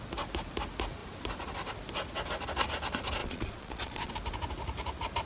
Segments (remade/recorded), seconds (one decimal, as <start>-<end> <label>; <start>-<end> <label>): 0.0-3.2 recorded; 3.2-4.1 remade; 4.1-5.3 recorded